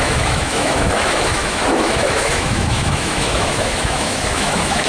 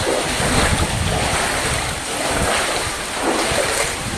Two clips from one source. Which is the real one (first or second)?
second